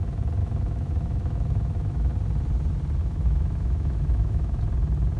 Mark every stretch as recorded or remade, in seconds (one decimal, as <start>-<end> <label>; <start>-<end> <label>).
0.0-0.4 recorded; 0.4-2.1 remade; 2.1-3.0 recorded; 3.0-4.6 remade; 4.6-5.2 recorded

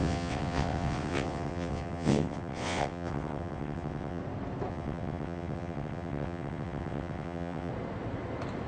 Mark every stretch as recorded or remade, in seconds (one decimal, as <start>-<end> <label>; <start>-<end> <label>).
0.0-4.2 remade; 4.2-4.7 recorded; 4.7-7.7 remade; 7.7-8.7 recorded

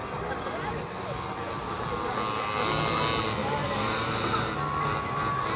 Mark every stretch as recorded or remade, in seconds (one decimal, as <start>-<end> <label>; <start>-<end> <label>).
0.0-3.4 recorded; 3.4-4.5 remade; 4.5-5.6 recorded